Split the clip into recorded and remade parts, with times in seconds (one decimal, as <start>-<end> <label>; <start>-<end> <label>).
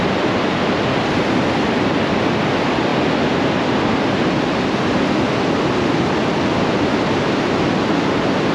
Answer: 0.0-8.5 recorded